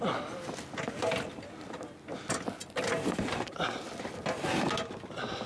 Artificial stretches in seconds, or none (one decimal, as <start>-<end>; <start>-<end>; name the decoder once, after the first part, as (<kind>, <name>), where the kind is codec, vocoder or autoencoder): 2.6-3.5 (vocoder, BigVGAN v2)